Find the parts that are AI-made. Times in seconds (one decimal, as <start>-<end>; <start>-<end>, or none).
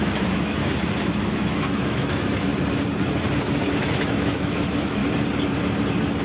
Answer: 0.0-0.6; 1.2-2.5; 3.4-5.0